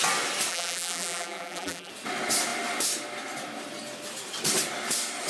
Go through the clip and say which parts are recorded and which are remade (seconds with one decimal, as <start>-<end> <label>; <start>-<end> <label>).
0.0-0.5 recorded; 0.5-1.9 remade; 1.9-5.3 recorded